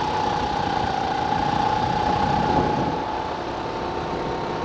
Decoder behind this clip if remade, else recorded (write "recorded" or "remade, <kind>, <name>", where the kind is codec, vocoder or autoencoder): recorded